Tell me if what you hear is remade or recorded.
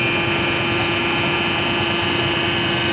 recorded